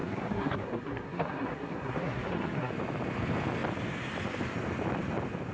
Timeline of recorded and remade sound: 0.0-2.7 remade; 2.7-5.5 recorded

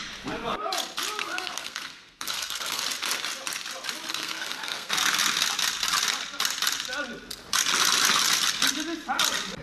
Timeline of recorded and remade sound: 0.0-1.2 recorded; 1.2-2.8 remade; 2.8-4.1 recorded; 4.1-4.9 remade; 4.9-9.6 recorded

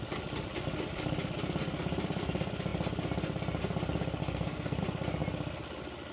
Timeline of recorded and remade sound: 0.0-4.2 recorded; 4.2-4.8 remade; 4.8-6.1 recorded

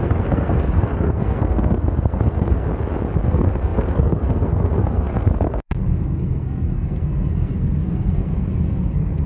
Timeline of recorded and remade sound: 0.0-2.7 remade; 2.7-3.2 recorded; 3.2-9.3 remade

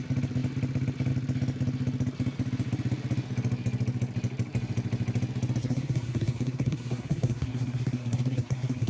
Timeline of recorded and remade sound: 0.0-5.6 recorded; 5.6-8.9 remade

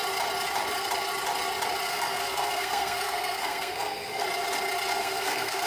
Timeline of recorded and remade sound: 0.0-1.9 recorded; 1.9-4.2 remade; 4.2-4.9 recorded; 4.9-5.7 remade

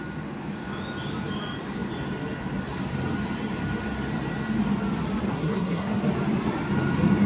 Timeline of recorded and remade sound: 0.0-5.3 recorded; 5.3-6.0 remade; 6.0-7.3 recorded

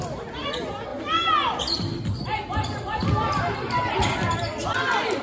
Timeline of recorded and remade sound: 0.0-5.2 recorded